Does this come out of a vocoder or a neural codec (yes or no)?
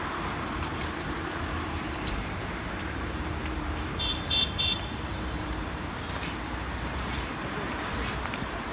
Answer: yes